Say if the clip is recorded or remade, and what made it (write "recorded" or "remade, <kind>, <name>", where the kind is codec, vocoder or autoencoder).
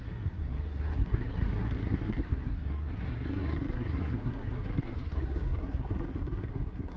remade, codec, SNAC